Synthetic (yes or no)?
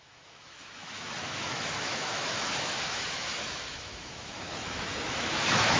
yes